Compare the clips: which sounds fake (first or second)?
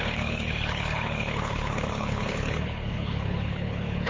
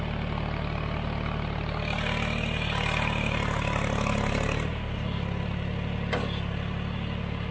first